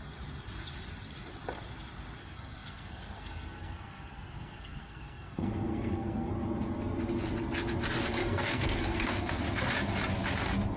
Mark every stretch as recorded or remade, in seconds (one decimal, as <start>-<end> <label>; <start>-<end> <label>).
0.0-2.2 recorded; 2.2-6.3 remade; 6.3-8.2 recorded; 8.2-9.4 remade; 9.4-10.8 recorded